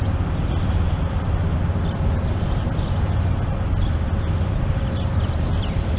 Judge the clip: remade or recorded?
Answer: recorded